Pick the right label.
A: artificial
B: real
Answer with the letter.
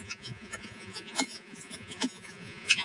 A